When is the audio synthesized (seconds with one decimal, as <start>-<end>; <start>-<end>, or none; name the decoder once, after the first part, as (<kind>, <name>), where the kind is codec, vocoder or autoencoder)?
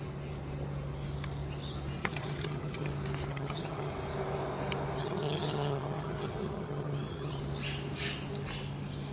2.0-2.9 (vocoder, HiFi-GAN); 3.3-3.9; 5.0-7.4